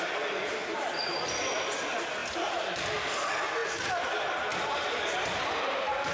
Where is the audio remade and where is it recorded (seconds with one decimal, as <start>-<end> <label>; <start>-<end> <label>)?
0.0-2.2 recorded; 2.2-2.7 remade; 2.7-4.5 recorded; 4.5-5.5 remade; 5.5-6.1 recorded